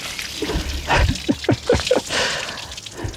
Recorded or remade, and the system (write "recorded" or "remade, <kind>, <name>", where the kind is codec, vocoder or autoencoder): recorded